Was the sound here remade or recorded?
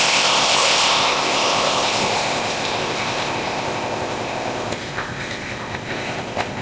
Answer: remade